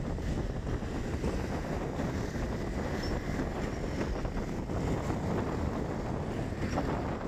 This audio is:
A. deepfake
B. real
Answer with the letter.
B